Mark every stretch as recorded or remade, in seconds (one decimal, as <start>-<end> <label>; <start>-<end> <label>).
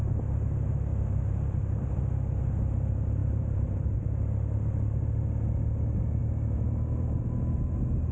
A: 0.0-0.9 recorded; 0.9-1.9 remade; 1.9-3.2 recorded; 3.2-3.8 remade; 3.8-6.2 recorded; 6.2-7.2 remade; 7.2-8.1 recorded